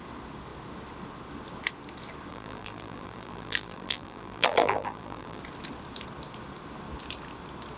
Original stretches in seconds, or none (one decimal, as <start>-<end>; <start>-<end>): 0.0-2.3; 5.4-7.8